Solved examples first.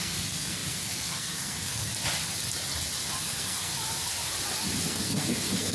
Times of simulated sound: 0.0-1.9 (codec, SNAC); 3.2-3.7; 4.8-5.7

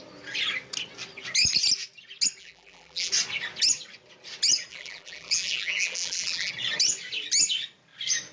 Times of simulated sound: 2.4-3.1 (vocoder, BigVGAN v2); 4.7-6.5